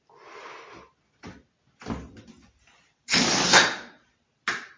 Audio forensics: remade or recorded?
recorded